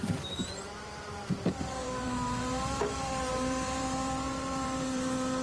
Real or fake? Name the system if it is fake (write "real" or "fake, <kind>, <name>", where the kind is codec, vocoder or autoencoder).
fake, vocoder, BigVGAN v2